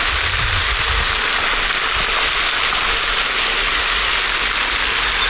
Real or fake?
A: real